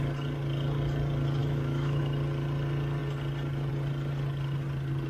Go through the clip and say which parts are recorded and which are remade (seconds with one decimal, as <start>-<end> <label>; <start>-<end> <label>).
0.0-1.4 recorded; 1.4-2.0 remade; 2.0-5.1 recorded